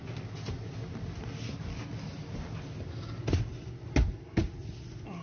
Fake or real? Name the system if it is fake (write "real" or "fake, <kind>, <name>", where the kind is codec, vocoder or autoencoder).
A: real